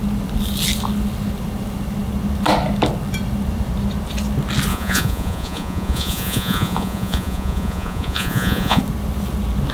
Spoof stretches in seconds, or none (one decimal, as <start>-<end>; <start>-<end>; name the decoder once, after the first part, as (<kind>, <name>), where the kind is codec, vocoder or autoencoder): 4.7-8.8 (vocoder, Vocos)